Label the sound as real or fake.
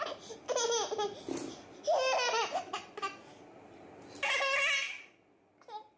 real